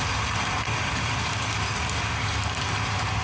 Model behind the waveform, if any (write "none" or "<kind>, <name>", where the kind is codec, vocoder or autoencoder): none